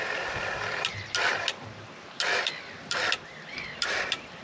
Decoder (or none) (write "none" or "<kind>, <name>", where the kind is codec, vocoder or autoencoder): vocoder, BigVGAN v2